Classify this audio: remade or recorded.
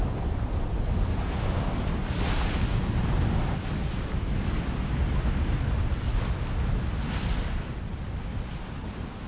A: recorded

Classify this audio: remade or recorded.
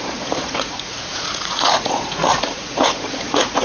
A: remade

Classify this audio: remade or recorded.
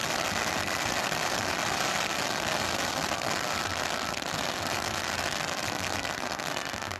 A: remade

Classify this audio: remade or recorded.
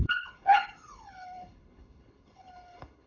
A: remade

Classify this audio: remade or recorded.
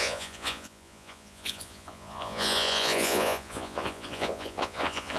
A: remade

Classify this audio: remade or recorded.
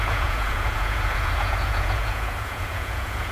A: remade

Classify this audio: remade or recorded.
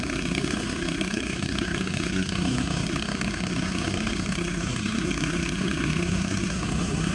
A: remade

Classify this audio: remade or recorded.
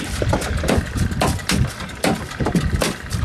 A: remade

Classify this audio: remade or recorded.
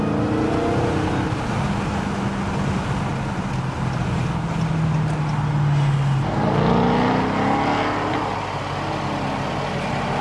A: recorded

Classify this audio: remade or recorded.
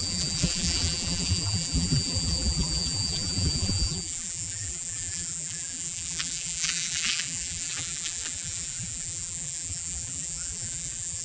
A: remade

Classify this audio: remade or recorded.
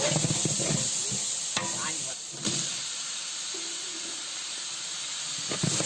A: recorded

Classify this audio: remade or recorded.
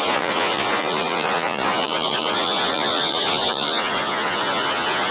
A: remade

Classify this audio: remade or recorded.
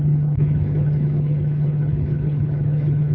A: remade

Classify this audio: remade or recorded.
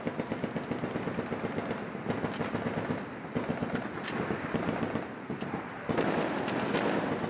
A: recorded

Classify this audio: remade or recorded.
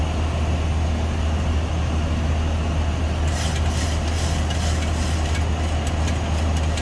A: recorded